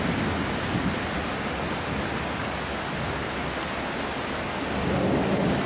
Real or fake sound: real